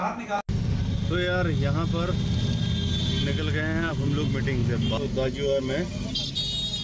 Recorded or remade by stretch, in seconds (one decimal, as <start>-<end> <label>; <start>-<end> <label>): 0.0-6.8 recorded